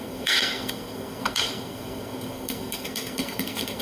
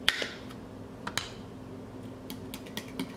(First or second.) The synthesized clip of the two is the first